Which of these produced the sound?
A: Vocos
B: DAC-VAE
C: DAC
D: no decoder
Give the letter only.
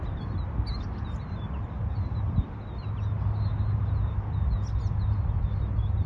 D